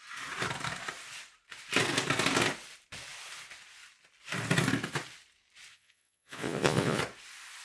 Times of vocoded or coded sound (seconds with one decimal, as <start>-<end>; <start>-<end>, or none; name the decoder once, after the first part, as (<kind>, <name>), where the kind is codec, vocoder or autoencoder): 5.7-7.0 (vocoder, Vocos)